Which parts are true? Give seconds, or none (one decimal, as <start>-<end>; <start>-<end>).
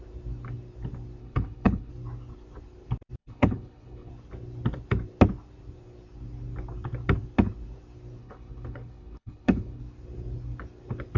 0.0-1.2; 1.9-3.2; 4.1-8.2; 9.8-11.2